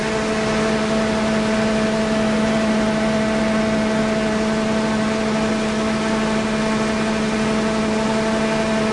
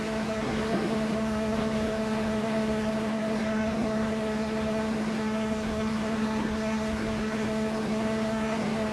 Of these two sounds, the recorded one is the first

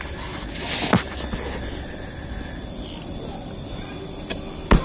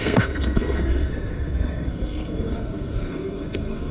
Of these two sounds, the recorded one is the first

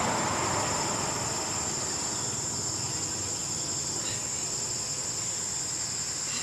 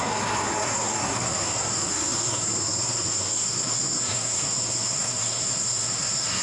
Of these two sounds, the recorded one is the first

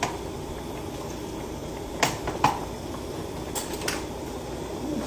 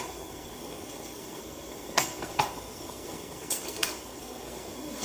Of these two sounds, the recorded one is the first